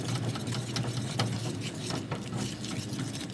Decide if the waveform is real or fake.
real